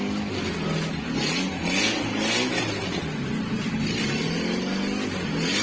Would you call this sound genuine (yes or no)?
yes